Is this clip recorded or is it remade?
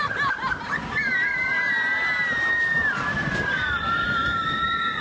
recorded